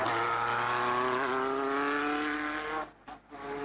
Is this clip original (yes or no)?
yes